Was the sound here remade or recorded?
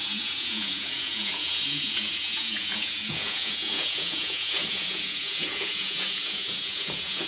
remade